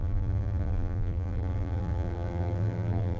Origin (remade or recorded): remade